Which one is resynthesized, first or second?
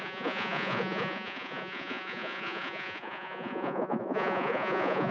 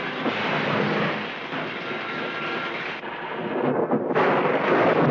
first